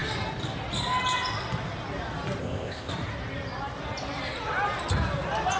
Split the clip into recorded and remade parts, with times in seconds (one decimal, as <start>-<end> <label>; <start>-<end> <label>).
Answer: 0.0-2.4 recorded; 2.4-2.9 remade; 2.9-5.6 recorded